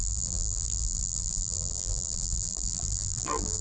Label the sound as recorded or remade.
remade